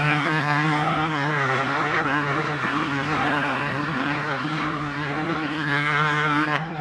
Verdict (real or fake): fake